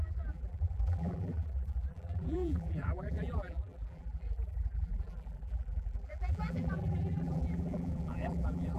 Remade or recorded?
remade